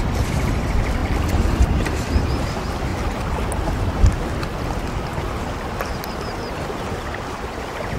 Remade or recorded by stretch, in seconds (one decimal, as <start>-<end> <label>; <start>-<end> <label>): 0.0-8.0 recorded